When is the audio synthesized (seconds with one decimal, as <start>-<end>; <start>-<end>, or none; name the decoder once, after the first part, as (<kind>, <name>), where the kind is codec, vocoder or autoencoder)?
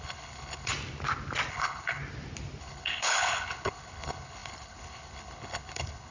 0.0-0.7 (codec, HILCodec); 1.5-2.0; 2.6-6.1